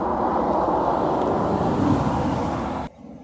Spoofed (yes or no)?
no